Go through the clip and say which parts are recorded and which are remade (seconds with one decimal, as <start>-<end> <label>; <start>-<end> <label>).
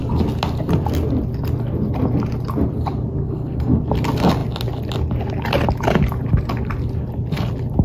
0.0-3.2 recorded; 3.2-3.8 remade; 3.8-7.8 recorded